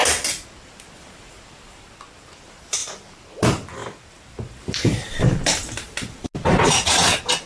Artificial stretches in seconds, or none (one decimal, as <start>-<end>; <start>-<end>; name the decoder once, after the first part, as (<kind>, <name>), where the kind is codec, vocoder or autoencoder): 2.8-5.9 (vocoder, BigVGAN v2)

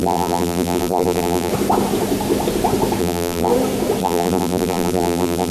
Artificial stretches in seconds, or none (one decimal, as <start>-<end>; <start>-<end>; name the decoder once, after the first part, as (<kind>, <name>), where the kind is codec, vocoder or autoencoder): 0.0-1.5 (vocoder, BigVGAN v2); 3.0-3.5; 4.0-5.5

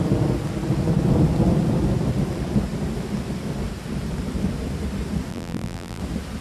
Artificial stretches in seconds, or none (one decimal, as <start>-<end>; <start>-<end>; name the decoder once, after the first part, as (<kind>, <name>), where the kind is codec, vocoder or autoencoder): 5.3-6.0 (vocoder, BigVGAN v2)

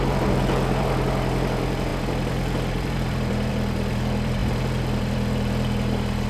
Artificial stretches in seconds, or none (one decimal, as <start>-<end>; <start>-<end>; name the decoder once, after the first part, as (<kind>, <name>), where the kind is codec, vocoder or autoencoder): 0.0-6.3 (vocoder, BigVGAN v2)

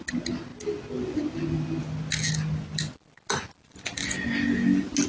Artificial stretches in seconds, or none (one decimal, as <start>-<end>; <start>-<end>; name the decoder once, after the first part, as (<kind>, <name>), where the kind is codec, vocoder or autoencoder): none

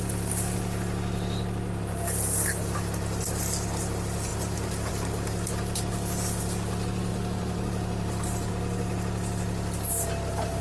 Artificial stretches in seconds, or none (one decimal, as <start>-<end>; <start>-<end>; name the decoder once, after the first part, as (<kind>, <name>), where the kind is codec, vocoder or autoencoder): 4.3-4.9 (vocoder, BigVGAN v2); 7.1-8.5

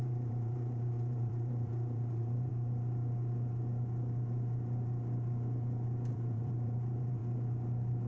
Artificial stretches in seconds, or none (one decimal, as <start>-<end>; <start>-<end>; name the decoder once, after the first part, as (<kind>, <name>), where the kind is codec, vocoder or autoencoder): 0.0-2.5 (vocoder, BigVGAN v2); 6.1-7.2

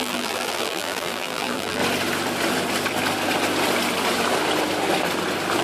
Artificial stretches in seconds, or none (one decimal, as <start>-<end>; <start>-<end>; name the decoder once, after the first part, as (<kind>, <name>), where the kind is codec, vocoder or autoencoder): 0.0-1.8 (vocoder, BigVGAN v2)